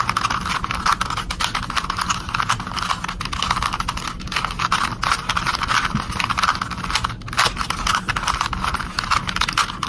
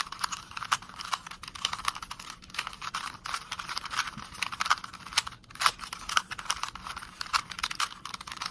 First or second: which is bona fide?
first